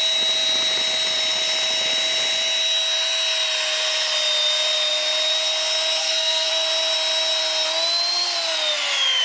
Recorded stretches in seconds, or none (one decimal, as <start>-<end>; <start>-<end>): 0.0-6.0; 6.5-9.2